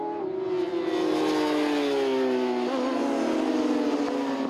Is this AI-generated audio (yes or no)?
no